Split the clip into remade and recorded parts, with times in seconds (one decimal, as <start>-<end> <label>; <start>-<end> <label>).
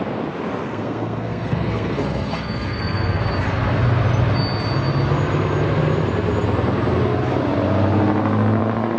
0.0-0.6 recorded; 0.6-3.2 remade; 3.2-9.0 recorded